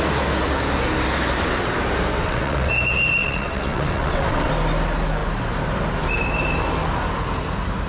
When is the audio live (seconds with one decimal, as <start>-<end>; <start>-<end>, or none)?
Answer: 0.0-2.2; 2.7-3.2; 4.5-7.9

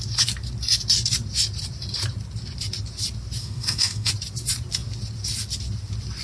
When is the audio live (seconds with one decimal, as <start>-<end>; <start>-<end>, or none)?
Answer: 0.0-3.4; 4.1-6.2

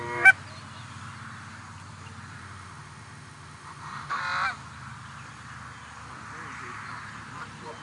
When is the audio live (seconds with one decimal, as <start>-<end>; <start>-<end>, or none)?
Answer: 0.0-2.4; 4.2-7.8

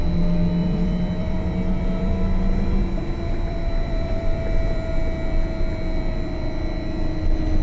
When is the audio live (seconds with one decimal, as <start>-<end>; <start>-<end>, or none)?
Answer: 0.0-0.6; 5.0-7.6

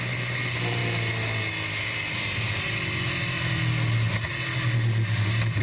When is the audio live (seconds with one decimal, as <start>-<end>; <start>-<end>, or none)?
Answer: 0.0-5.6

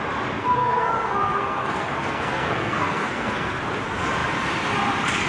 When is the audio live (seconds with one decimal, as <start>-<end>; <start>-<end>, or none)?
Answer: 0.0-0.4; 3.6-5.3

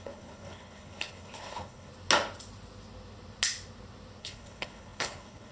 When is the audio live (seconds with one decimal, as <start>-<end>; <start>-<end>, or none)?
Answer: 1.9-4.2

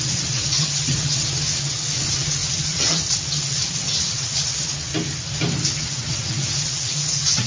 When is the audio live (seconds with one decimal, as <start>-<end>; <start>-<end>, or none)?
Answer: 4.9-5.8